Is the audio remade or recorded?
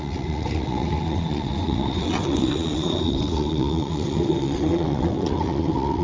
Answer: remade